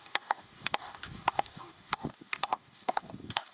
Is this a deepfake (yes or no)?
yes